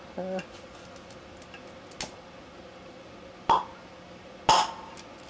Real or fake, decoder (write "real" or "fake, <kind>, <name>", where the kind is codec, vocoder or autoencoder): real